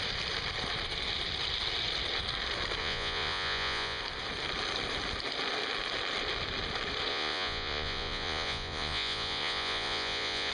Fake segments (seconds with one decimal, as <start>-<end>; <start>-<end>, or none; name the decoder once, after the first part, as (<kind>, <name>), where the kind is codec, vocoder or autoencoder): 2.8-4.0 (vocoder, Vocos); 7.1-10.5